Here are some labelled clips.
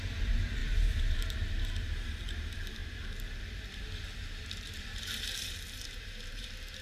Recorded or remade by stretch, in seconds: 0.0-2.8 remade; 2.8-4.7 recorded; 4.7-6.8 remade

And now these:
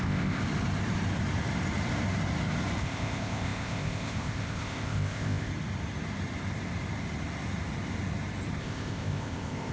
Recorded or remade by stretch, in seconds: 0.0-0.4 remade; 0.4-2.8 recorded; 2.8-5.5 remade; 5.5-8.6 recorded; 8.6-9.7 remade